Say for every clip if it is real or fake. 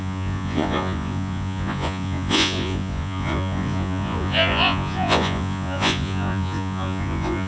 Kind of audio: fake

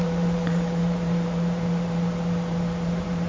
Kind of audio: fake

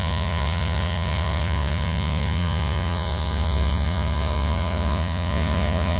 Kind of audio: fake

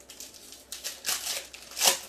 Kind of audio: real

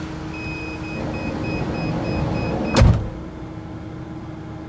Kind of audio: real